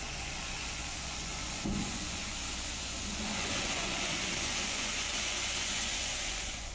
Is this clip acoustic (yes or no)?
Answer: no